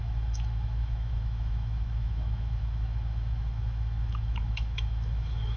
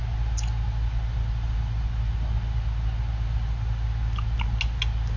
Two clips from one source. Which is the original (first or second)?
second